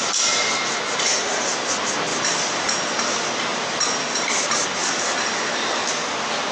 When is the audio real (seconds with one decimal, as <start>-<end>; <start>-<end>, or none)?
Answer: 0.0-1.1; 1.7-2.1; 2.7-3.5; 4.3-6.5